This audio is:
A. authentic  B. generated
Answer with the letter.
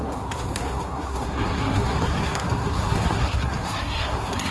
B